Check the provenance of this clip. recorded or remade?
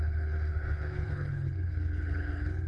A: remade